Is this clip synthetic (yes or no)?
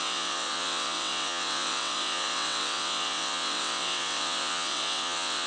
yes